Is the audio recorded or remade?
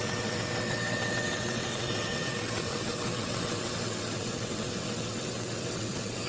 remade